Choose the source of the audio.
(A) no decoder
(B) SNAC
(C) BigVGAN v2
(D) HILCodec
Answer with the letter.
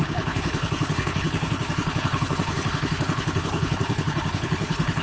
D